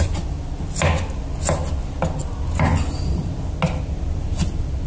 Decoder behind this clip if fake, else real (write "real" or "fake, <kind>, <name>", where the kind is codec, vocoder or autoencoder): real